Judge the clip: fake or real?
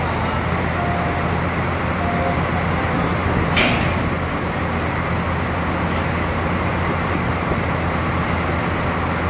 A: real